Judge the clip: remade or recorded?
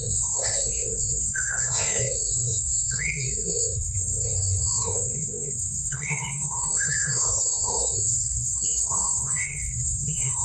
remade